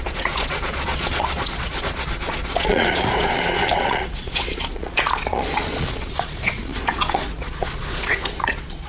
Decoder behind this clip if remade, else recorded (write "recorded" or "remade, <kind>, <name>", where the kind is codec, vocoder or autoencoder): remade, vocoder, Vocos